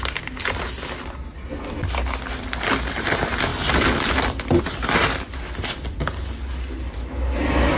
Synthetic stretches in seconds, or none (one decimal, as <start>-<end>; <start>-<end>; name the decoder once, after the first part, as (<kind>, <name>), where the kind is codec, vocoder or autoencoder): none

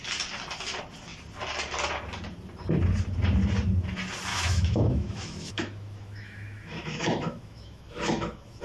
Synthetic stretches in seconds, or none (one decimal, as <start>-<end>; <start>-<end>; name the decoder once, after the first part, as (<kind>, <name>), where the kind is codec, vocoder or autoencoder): 4.3-8.6 (autoencoder, DAC-VAE)

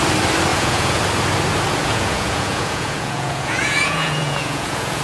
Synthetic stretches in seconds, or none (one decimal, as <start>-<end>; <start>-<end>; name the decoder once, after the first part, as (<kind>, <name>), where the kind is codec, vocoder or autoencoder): 0.5-1.0 (vocoder, Vocos); 1.8-5.0

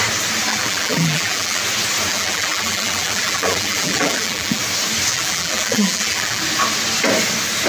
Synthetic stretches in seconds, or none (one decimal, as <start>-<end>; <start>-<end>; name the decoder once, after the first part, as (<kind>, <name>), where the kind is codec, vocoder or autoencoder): 0.5-1.6 (vocoder, BigVGAN v2); 2.1-4.6; 5.1-6.4

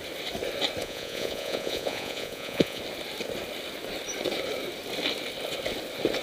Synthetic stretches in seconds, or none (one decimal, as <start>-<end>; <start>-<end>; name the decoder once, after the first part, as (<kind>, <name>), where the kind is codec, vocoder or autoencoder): 0.8-2.8 (vocoder, Vocos)

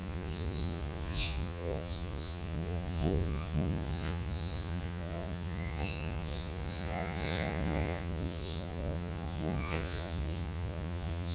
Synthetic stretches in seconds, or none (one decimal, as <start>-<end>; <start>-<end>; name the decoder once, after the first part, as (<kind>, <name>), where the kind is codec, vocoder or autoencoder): 0.0-11.3 (vocoder, Vocos)